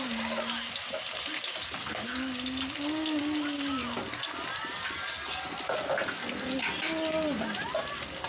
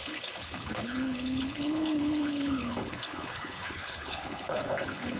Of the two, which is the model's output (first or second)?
second